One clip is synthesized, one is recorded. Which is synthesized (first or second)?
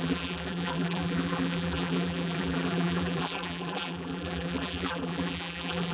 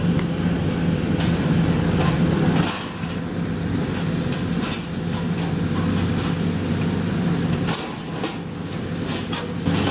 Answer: first